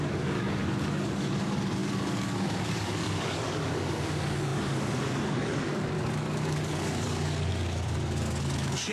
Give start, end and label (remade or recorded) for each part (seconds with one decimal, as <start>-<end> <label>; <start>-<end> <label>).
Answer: 0.0-8.9 remade